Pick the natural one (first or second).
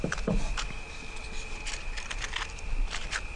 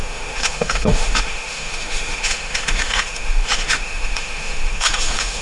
first